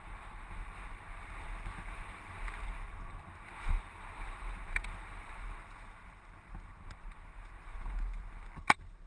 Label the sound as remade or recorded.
recorded